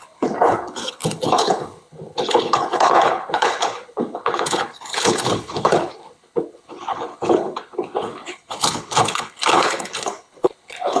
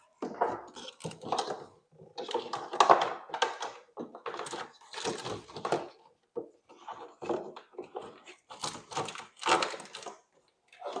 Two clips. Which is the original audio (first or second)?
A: second